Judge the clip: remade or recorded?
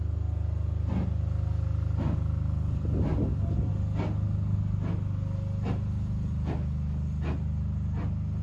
recorded